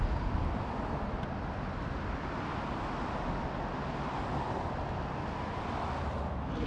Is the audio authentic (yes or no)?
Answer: yes